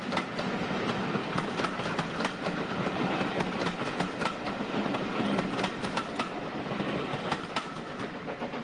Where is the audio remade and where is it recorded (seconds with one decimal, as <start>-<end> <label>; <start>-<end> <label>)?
0.0-8.6 recorded